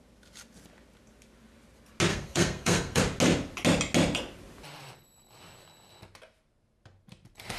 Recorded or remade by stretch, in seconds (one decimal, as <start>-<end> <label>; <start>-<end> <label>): 0.0-2.1 recorded; 2.1-3.0 remade; 3.0-7.6 recorded